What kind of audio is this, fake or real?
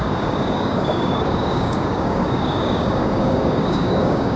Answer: fake